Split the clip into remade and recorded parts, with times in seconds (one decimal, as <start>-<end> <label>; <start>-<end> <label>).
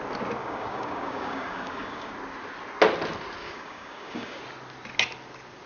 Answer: 0.0-0.4 recorded; 0.4-2.1 remade; 2.1-3.4 recorded; 3.4-4.4 remade; 4.4-5.7 recorded